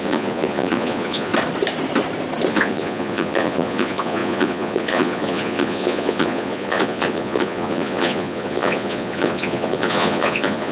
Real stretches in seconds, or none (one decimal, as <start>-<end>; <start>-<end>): 1.3-2.5